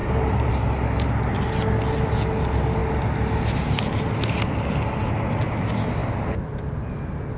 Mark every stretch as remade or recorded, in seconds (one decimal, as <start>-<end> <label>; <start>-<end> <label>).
0.0-0.5 remade; 0.5-7.4 recorded